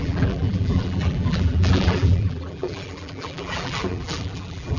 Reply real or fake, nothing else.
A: fake